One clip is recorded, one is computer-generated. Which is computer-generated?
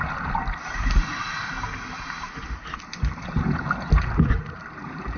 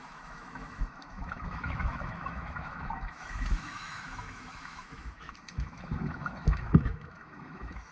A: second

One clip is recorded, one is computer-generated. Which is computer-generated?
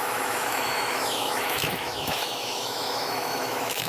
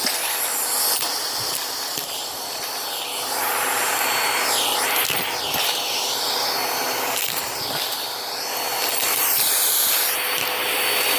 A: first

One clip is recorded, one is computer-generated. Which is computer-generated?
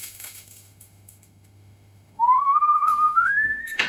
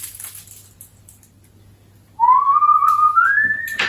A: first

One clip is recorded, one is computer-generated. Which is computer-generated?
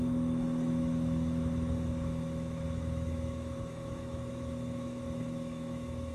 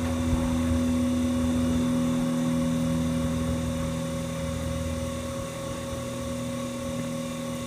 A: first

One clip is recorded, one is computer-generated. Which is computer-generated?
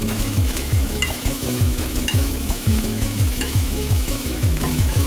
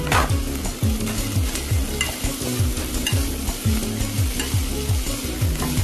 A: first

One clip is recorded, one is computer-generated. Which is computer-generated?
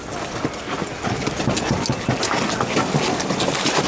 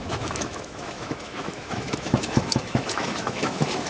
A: second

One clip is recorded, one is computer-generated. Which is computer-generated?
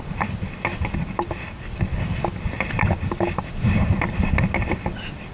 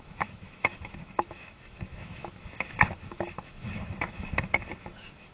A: second